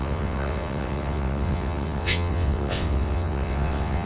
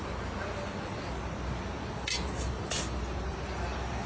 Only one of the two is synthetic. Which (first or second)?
first